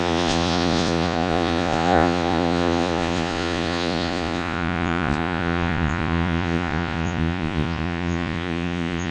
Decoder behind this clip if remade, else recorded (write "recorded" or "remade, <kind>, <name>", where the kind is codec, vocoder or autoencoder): remade, vocoder, Vocos